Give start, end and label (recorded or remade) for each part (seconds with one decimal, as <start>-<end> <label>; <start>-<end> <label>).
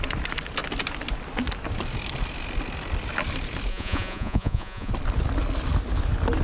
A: 0.0-3.7 recorded; 3.7-4.9 remade; 4.9-6.4 recorded